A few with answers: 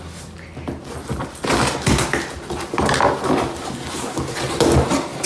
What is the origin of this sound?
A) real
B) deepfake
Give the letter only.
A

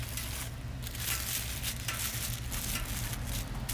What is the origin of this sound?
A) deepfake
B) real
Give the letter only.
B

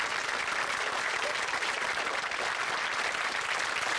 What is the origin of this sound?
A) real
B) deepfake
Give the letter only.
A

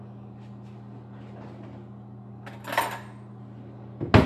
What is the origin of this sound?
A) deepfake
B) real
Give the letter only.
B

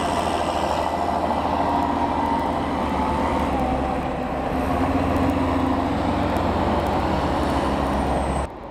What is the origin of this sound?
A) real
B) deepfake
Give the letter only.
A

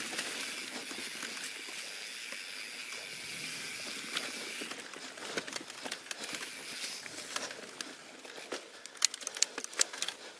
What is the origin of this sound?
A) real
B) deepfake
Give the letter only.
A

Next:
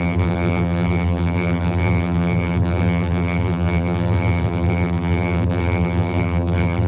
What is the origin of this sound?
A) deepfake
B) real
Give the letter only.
A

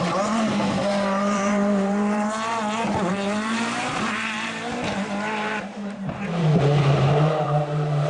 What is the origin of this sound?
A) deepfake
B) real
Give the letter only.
A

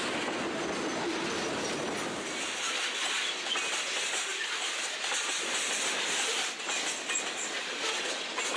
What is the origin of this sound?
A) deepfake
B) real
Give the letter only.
B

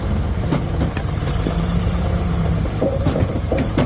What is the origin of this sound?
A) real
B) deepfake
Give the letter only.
B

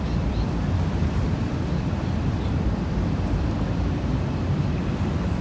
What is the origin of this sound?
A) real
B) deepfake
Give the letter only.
B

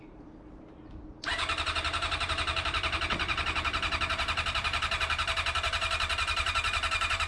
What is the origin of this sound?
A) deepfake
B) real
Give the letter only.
A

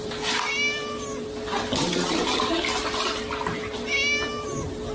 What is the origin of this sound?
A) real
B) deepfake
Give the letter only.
A